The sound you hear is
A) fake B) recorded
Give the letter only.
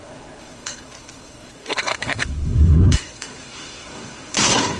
A